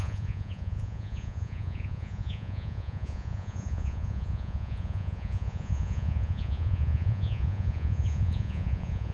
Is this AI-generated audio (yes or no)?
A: yes